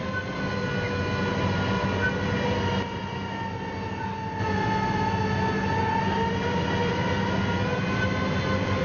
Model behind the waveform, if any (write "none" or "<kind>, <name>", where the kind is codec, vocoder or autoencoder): none